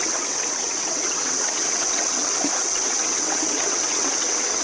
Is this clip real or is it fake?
fake